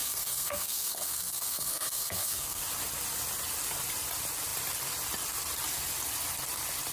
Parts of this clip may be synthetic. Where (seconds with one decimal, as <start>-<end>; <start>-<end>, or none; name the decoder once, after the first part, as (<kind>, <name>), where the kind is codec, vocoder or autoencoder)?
0.0-2.6 (codec, SNAC)